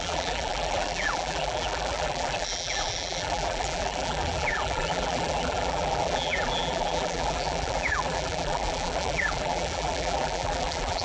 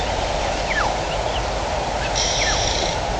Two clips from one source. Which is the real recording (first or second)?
second